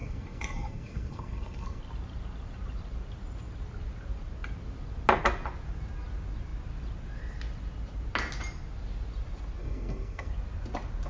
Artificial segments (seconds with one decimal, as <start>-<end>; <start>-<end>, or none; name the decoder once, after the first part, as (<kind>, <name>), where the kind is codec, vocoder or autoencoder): 0.0-1.8 (codec, SNAC); 9.6-10.3